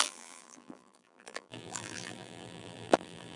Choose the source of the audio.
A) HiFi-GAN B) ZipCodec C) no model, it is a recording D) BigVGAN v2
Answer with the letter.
D